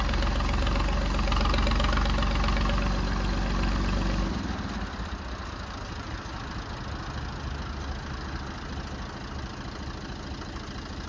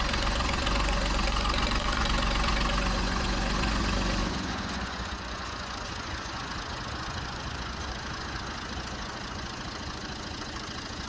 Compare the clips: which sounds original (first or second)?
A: first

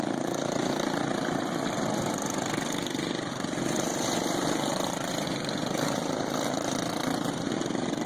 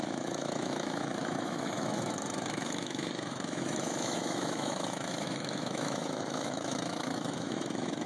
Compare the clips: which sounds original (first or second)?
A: first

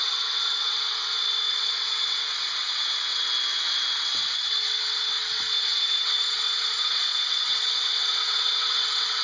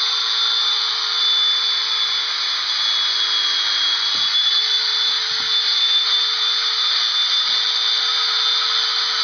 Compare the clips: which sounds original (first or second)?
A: second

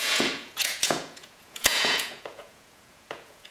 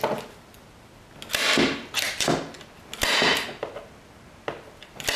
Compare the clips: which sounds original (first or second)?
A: second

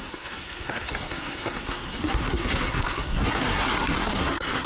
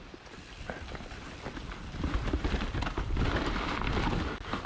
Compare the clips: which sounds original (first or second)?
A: second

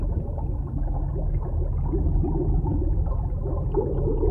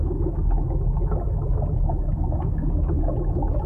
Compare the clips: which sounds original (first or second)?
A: first